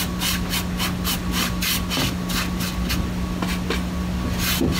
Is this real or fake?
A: real